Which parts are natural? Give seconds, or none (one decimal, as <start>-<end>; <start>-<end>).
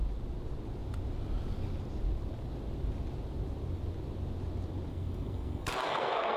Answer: 0.0-4.9